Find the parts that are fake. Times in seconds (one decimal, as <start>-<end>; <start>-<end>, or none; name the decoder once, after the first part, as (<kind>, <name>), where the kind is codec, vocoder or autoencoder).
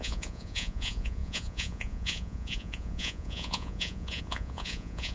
0.0-5.1 (vocoder, Vocos)